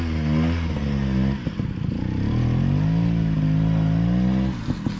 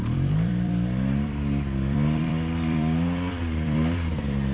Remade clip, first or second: second